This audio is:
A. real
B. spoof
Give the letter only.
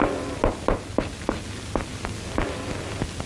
A